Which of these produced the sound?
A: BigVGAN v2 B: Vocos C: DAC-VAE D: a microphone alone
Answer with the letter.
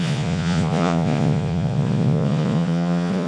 B